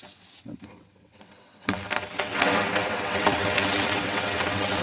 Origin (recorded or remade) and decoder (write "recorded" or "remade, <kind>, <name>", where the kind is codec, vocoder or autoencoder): remade, vocoder, WaveNeXt